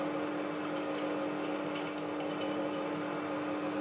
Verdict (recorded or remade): recorded